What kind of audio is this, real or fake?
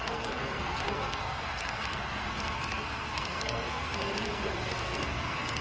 fake